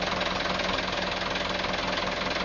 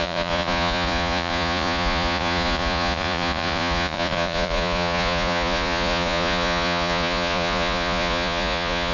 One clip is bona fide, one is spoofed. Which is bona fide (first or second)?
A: first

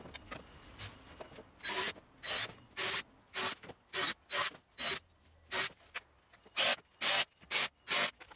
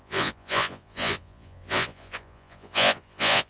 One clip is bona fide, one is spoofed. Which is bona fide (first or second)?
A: first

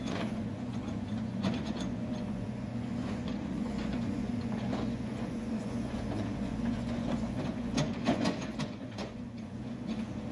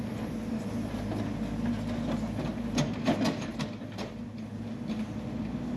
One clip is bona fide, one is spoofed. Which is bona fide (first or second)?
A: second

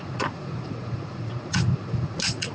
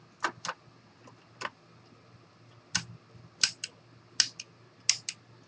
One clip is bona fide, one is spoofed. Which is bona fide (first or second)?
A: second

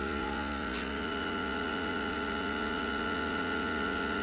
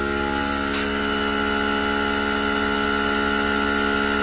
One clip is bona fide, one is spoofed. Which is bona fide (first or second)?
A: second